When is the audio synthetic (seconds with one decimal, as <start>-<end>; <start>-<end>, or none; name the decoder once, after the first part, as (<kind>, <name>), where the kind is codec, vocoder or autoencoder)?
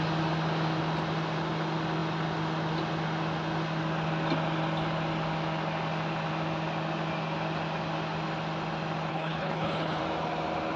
9.1-10.0 (codec, HILCodec)